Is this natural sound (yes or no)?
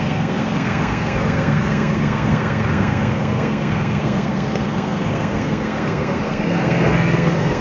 no